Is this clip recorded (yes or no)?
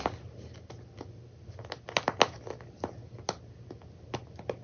yes